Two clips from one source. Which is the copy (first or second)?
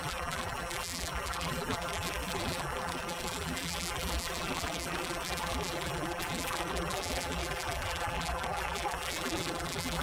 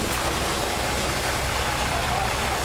first